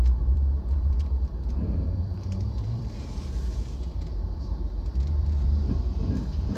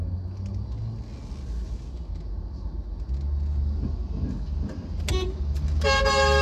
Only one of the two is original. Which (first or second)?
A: second